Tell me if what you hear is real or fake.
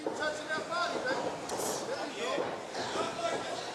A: real